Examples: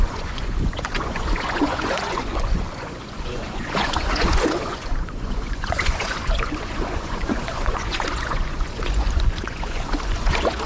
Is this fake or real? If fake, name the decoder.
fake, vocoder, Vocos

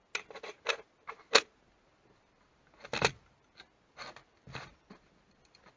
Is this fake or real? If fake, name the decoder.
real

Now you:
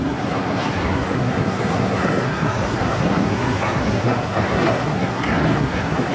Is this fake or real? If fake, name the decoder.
fake, codec, SNAC